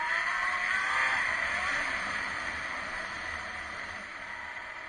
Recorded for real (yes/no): no